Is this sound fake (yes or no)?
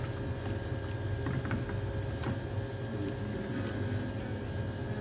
no